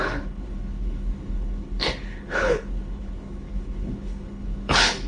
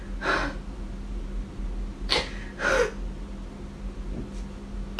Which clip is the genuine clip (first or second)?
second